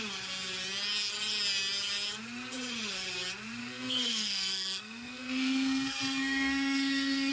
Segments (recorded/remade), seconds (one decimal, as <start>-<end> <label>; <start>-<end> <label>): 0.0-3.6 recorded; 3.6-7.3 remade